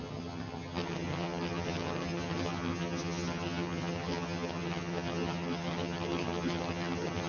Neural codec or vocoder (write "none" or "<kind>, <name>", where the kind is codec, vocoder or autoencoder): vocoder, HiFi-GAN